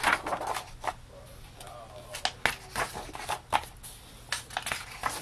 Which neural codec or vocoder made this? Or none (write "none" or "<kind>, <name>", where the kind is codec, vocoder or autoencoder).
none